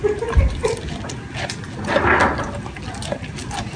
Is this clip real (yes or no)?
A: yes